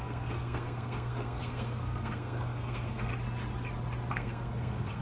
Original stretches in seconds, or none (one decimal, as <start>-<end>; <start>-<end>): 3.1-4.1